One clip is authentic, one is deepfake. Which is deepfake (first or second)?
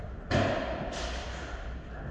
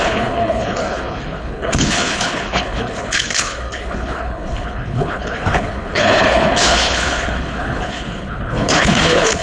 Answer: second